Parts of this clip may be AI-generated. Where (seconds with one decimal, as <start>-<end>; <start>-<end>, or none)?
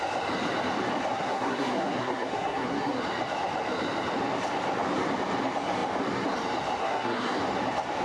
1.1-3.0; 6.8-7.4